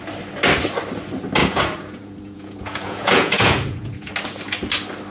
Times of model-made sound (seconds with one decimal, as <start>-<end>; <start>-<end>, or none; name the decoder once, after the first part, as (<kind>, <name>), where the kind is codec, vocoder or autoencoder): 1.4-4.1 (vocoder, Vocos)